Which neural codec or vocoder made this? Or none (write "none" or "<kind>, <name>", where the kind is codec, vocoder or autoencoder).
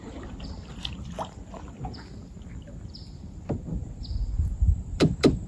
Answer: vocoder, BigVGAN v2